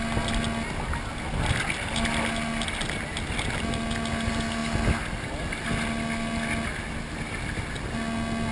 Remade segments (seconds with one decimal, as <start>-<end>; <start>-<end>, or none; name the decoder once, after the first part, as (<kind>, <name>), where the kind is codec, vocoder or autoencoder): none